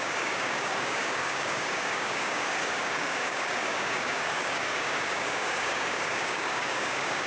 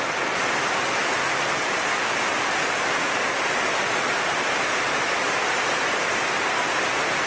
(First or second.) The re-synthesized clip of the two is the first